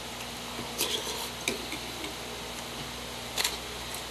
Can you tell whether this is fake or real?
real